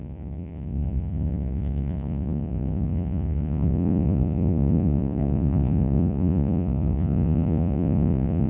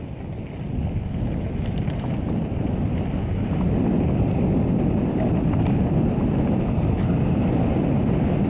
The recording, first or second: second